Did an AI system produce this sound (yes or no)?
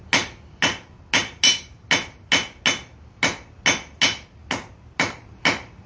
no